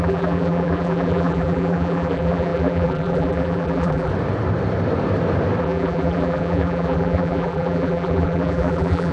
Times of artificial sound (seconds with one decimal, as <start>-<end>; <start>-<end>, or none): 0.0-4.1; 5.6-9.1